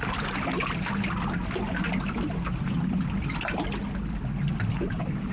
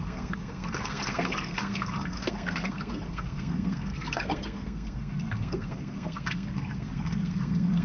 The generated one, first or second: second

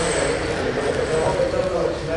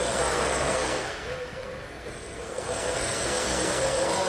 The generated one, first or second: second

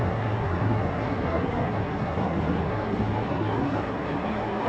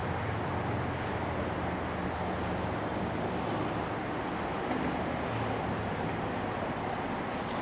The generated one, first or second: first